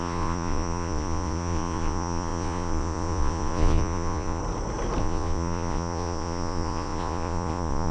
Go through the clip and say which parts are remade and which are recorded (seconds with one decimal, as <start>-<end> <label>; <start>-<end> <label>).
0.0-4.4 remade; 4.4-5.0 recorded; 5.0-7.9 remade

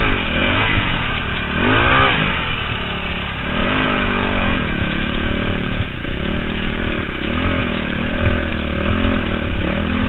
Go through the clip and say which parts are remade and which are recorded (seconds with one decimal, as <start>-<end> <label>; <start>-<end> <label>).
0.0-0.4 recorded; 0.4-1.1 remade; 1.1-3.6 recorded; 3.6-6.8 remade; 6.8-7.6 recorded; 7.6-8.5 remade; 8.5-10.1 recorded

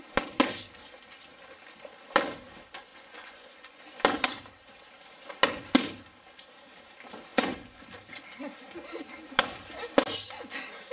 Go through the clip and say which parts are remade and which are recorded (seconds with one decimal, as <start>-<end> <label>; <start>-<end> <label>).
0.0-2.9 recorded; 2.9-3.8 remade; 3.8-7.3 recorded; 7.3-7.8 remade; 7.8-10.9 recorded

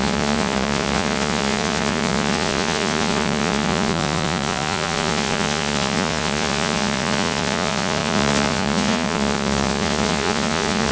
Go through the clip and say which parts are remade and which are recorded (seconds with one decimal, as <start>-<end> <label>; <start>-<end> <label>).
0.0-10.9 remade

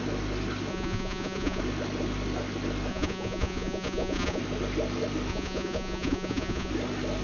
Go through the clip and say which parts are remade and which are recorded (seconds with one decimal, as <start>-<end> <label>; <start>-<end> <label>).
0.0-0.7 recorded; 0.7-1.6 remade; 1.6-2.9 recorded; 2.9-4.4 remade; 4.4-5.3 recorded; 5.3-6.7 remade; 6.7-7.2 recorded

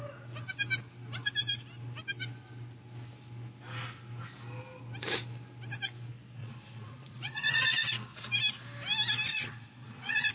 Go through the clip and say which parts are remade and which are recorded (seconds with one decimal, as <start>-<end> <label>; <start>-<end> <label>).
0.0-6.4 recorded; 6.4-7.9 remade; 7.9-9.3 recorded; 9.3-10.3 remade

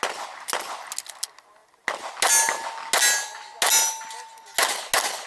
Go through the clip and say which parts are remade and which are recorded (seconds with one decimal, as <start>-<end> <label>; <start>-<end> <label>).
0.0-5.3 recorded